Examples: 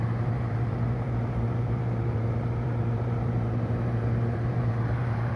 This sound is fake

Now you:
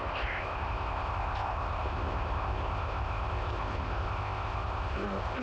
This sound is fake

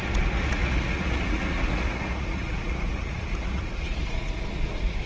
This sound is fake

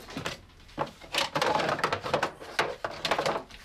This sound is real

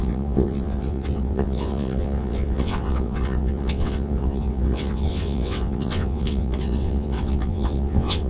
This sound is fake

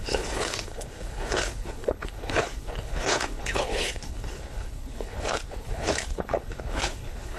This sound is fake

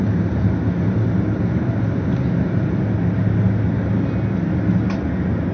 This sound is real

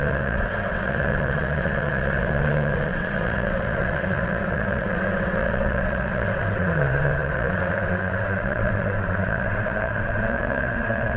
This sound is fake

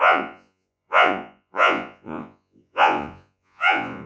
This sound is fake